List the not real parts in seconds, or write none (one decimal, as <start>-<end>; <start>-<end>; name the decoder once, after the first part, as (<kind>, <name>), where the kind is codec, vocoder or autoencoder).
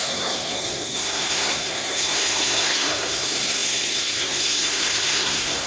0.0-5.7 (codec, SNAC)